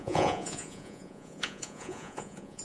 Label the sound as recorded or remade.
remade